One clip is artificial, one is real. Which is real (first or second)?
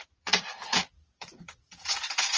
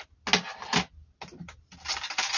second